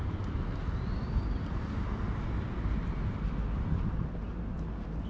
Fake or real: real